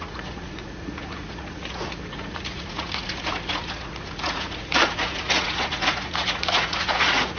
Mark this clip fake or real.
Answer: fake